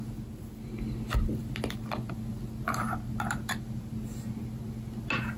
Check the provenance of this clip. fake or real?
real